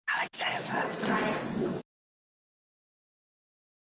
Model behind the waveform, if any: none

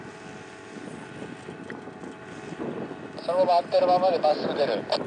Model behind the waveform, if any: none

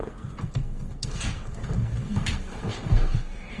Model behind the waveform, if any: codec, SNAC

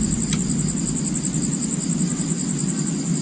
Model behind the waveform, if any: none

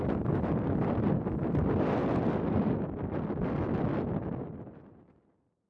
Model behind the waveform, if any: none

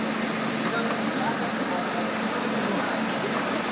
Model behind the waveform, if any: none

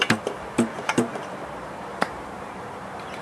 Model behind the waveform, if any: vocoder, BigVGAN v2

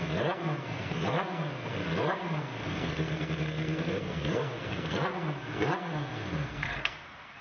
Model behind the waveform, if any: codec, SNAC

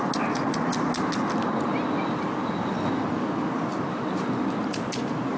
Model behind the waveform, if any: none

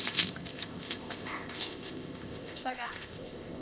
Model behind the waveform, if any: codec, ZipCodec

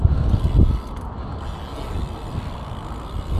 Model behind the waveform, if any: none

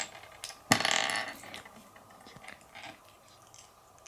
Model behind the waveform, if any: none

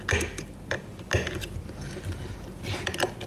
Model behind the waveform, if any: none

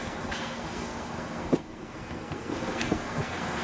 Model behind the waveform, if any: codec, SNAC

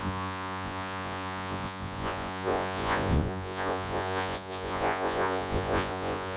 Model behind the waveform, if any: vocoder, Vocos